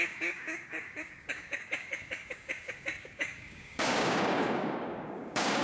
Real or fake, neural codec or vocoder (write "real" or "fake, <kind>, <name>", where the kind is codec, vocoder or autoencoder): fake, codec, DAC